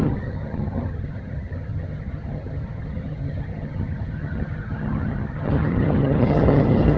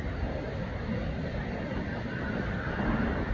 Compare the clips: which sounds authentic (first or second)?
second